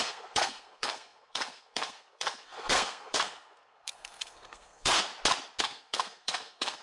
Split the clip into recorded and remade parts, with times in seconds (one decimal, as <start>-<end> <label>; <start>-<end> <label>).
0.0-5.1 remade; 5.1-5.6 recorded; 5.6-6.8 remade